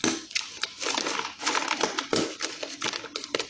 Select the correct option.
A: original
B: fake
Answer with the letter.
A